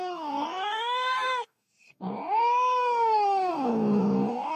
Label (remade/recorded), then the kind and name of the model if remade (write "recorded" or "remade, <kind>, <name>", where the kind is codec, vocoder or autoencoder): remade, codec, DAC